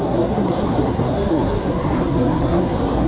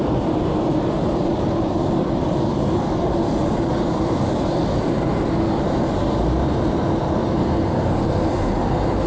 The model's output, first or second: first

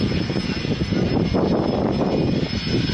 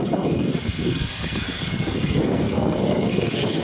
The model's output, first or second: second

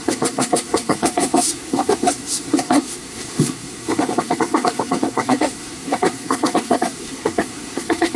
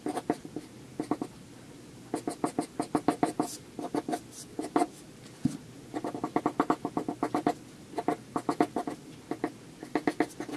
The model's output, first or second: first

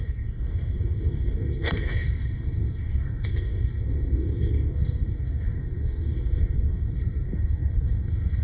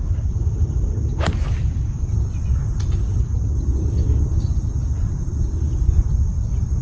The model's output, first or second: first